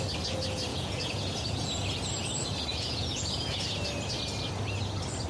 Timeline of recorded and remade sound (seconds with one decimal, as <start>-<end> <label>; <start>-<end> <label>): 0.0-0.7 recorded; 0.7-1.8 remade; 1.8-2.7 recorded; 2.7-3.5 remade; 3.5-5.3 recorded

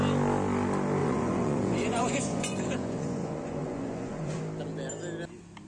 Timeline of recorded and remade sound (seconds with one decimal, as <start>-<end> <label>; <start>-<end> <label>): 0.0-1.0 recorded; 1.0-4.4 remade; 4.4-5.7 recorded

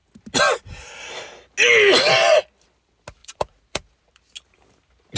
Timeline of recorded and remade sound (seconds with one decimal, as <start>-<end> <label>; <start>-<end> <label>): 0.0-3.2 recorded; 3.2-3.9 remade; 3.9-5.2 recorded

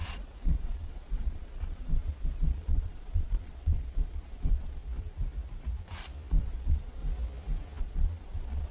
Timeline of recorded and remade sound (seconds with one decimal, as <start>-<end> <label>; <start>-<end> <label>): 0.0-4.8 remade; 4.8-6.4 recorded; 6.4-7.0 remade; 7.0-7.8 recorded; 7.8-8.7 remade

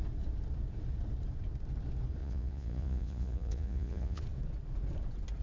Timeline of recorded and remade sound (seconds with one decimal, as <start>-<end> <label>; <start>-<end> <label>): 0.0-2.2 recorded; 2.2-4.2 remade; 4.2-5.4 recorded

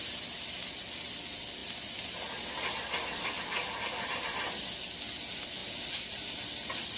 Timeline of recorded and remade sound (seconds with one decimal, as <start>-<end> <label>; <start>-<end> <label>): 0.0-7.0 recorded

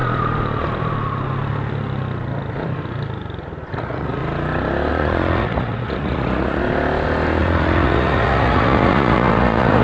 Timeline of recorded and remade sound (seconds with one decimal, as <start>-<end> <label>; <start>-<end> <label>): 0.0-3.8 recorded; 3.8-4.2 remade; 4.2-4.9 recorded; 4.9-6.6 remade; 6.6-7.4 recorded; 7.4-9.8 remade